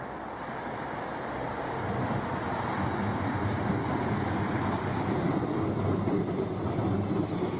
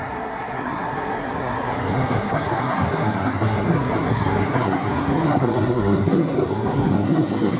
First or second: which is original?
first